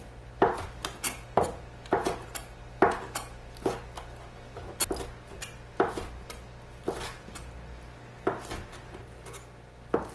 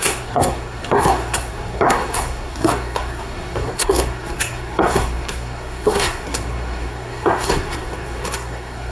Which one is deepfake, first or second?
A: second